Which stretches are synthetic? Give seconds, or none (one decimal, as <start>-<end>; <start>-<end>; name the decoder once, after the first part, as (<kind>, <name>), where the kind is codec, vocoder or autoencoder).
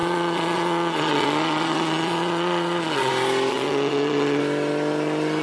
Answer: 0.0-3.1 (vocoder, Vocos); 3.5-4.4